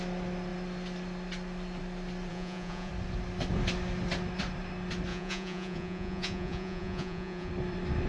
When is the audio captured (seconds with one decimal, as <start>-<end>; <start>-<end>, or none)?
0.0-2.3; 2.9-5.1; 7.5-8.1

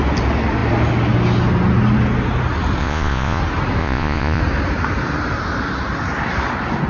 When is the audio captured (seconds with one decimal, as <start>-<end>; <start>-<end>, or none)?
0.0-2.8; 3.4-3.8; 4.4-6.9

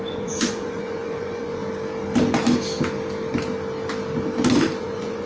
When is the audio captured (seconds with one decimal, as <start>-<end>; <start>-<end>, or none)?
1.6-4.8

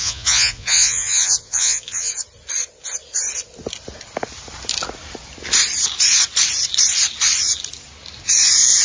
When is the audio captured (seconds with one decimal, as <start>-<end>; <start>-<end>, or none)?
2.1-8.8

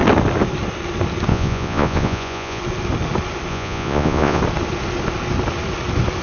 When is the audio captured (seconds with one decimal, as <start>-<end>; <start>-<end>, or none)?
0.0-1.3; 2.6-3.5; 4.4-6.2

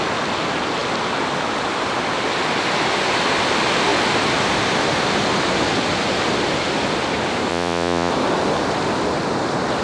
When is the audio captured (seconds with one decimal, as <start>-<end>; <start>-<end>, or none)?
0.0-7.5; 8.1-9.8

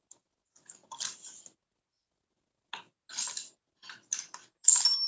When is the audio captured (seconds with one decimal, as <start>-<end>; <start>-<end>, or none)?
0.0-5.1

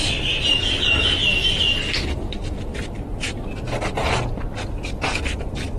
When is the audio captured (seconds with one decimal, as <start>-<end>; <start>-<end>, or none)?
0.0-5.8